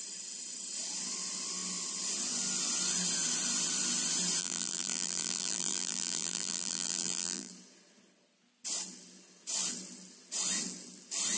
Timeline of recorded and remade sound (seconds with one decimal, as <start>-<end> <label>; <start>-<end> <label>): 0.0-4.4 recorded; 4.4-7.5 remade; 7.5-11.4 recorded